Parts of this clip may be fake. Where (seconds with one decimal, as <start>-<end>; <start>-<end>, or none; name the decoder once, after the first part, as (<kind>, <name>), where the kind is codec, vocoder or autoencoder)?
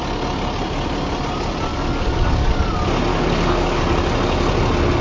1.7-2.5 (codec, DAC); 3.1-3.8